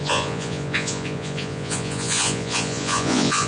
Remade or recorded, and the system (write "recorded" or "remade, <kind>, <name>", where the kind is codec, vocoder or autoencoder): remade, vocoder, Vocos